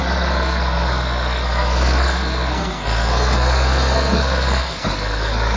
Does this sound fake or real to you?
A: fake